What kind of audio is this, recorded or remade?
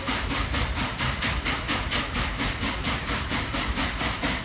recorded